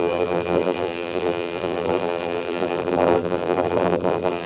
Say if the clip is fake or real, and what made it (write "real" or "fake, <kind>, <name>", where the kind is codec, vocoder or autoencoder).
fake, vocoder, BigVGAN v2